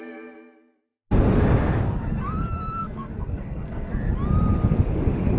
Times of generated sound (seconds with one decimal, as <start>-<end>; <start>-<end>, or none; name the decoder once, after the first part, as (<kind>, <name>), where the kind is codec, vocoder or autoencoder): 2.8-3.9 (codec, SNAC)